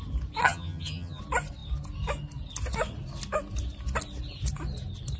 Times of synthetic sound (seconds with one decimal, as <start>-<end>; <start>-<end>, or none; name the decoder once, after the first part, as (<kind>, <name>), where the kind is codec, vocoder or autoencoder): 0.4-1.2 (vocoder, HiFi-GAN)